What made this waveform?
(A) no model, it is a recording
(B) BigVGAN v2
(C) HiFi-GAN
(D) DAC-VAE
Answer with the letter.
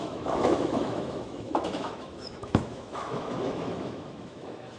D